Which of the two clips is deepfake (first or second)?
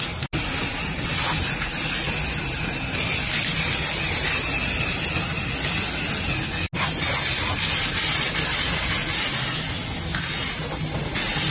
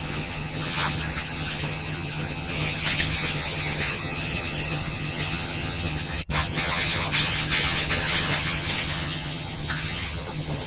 second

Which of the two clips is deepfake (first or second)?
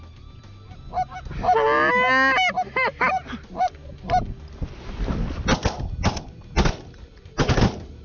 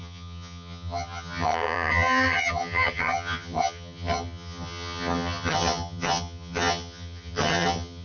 second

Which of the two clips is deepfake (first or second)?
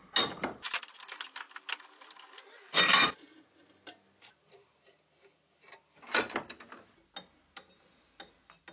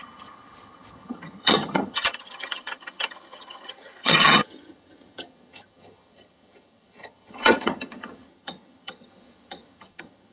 second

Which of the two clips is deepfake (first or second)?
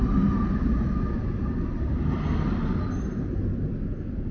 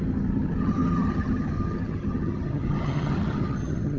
second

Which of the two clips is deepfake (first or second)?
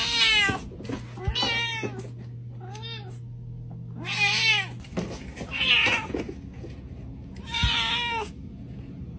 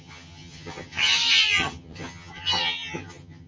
second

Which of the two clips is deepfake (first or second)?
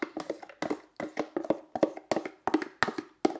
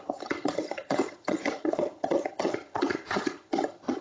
second